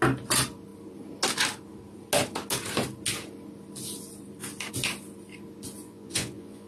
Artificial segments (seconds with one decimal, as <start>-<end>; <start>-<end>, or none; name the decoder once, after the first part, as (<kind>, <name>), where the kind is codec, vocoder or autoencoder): 5.8-6.7 (vocoder, Vocos)